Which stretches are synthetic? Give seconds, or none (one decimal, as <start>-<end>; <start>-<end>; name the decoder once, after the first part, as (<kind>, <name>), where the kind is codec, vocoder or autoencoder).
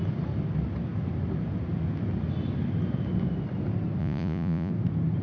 4.0-4.7 (vocoder, Vocos)